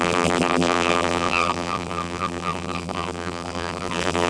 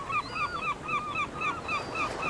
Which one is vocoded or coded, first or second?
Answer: first